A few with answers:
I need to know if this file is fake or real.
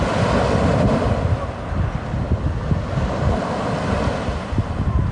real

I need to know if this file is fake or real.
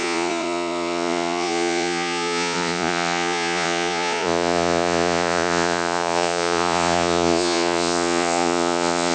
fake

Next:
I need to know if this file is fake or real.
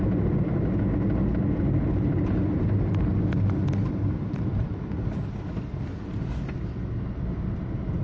real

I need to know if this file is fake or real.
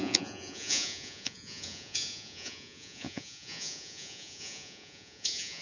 fake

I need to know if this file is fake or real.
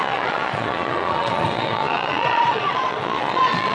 fake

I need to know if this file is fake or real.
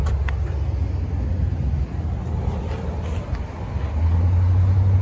real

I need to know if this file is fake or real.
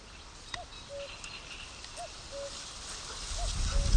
real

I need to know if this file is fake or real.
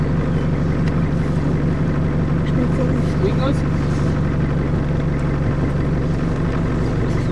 real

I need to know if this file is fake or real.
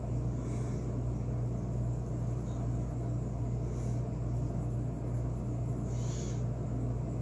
real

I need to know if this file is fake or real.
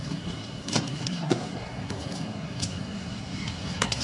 fake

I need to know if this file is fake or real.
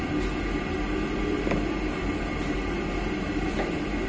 real